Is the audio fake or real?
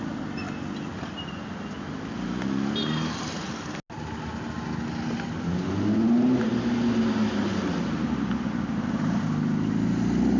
real